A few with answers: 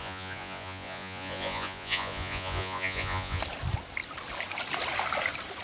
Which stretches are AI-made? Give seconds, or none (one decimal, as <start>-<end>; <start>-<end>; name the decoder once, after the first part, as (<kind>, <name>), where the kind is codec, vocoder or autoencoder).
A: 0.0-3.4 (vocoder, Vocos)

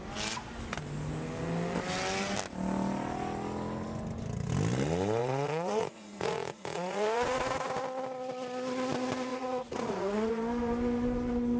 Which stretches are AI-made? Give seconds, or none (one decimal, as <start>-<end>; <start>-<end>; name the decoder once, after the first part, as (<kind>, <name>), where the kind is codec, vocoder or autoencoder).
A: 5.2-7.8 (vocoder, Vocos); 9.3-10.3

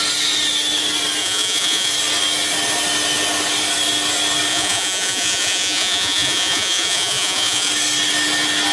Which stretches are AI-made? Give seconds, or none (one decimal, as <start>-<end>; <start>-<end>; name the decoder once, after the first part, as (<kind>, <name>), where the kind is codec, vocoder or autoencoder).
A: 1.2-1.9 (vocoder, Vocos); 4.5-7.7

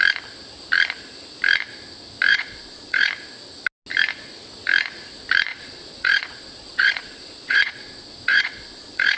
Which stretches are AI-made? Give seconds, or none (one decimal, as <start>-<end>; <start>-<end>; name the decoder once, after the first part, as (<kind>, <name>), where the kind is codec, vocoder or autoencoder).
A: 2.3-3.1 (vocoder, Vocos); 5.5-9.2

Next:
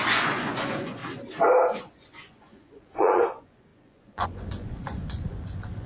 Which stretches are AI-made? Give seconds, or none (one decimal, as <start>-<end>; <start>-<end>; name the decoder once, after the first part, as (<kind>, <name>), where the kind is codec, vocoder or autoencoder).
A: 0.0-1.0 (vocoder, Vocos); 1.6-5.9

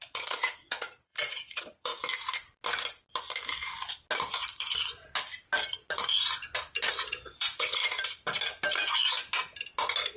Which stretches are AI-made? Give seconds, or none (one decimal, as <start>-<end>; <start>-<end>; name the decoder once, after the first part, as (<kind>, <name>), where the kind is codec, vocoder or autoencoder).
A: 0.0-1.9 (vocoder, Vocos); 6.9-7.8

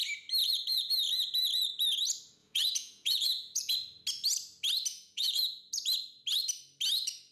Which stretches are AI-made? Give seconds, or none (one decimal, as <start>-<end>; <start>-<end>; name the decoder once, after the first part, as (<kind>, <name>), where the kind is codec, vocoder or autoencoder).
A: 0.4-0.9 (vocoder, Vocos); 2.4-3.7; 4.9-5.7